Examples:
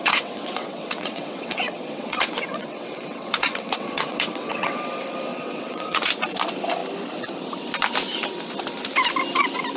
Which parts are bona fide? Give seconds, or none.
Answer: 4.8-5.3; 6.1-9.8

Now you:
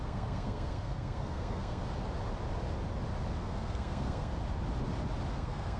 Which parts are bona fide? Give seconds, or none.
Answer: 1.8-3.4; 4.3-5.3